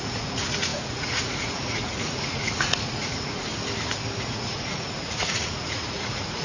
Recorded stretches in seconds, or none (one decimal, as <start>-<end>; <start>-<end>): 3.5-4.2